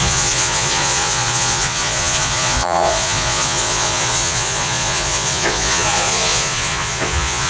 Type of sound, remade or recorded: remade